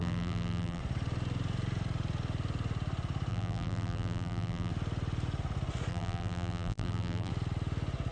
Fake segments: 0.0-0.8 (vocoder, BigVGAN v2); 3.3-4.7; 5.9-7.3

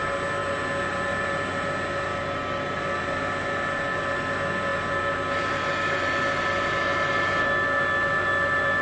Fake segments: none